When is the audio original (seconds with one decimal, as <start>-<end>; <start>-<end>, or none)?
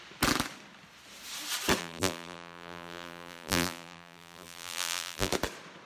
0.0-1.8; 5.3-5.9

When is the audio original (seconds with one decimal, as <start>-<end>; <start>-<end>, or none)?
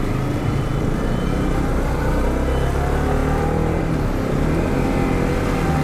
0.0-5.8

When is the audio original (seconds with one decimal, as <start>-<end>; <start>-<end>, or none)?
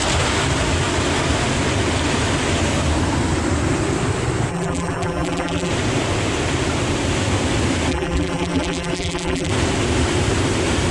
0.0-4.5; 5.7-7.9; 9.5-10.9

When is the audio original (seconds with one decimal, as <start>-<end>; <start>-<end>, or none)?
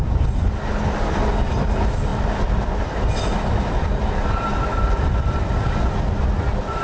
0.0-2.1; 3.1-6.8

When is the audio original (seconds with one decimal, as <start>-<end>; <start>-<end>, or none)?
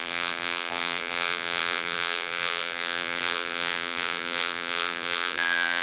none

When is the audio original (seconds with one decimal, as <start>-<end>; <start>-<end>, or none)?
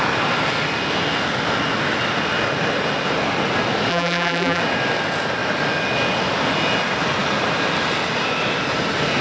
0.0-3.9; 4.6-9.2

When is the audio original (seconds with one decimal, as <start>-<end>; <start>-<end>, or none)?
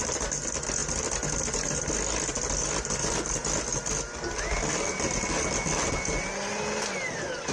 0.0-7.5